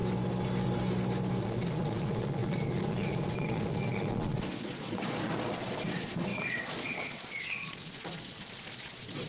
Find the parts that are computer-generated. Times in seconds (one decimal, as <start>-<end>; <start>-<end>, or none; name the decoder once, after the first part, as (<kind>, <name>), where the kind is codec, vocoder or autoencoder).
1.4-9.3 (vocoder, Vocos)